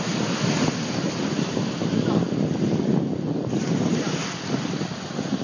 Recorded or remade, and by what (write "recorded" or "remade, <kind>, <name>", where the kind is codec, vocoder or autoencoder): recorded